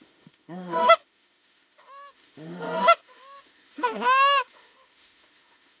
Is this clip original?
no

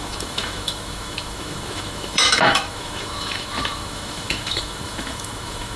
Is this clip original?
no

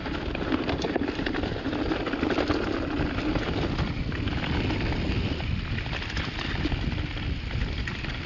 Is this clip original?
yes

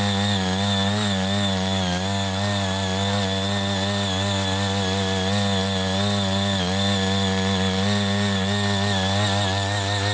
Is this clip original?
yes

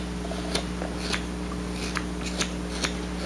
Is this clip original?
yes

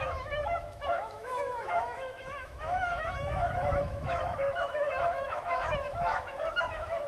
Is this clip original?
no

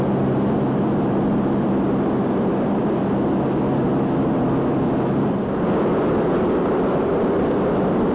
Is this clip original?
yes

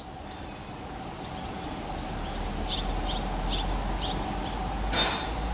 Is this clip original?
yes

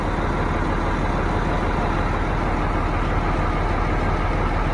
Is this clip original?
yes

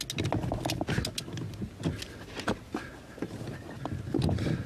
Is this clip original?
yes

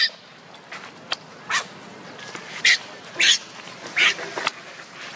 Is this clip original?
yes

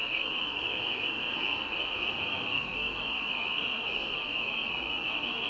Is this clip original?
no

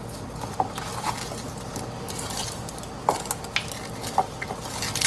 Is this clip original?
yes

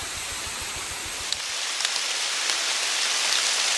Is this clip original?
yes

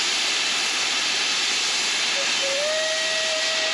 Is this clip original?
yes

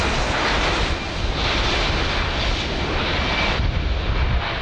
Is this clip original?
yes